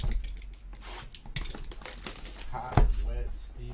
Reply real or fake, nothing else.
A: real